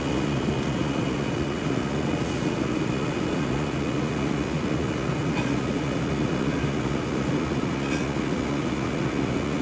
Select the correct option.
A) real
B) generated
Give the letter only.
B